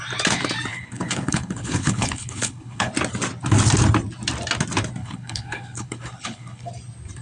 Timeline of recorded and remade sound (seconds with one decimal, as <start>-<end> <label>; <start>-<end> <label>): 0.0-0.7 recorded; 0.7-2.9 remade; 2.9-5.0 recorded; 5.0-6.7 remade; 6.7-7.2 recorded